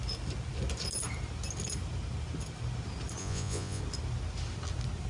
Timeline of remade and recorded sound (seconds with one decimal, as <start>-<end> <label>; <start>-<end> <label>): 0.0-3.2 recorded; 3.2-3.8 remade; 3.8-5.1 recorded